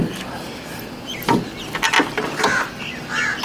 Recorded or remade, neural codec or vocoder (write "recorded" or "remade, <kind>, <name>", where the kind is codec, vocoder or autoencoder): recorded